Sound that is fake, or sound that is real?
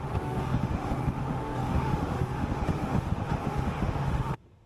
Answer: fake